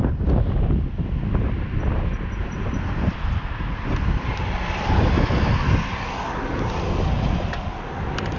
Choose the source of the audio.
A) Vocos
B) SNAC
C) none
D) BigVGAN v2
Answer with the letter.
C